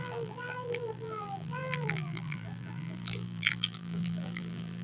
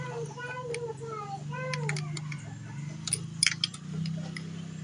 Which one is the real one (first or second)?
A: second